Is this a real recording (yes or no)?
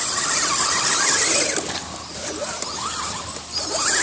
no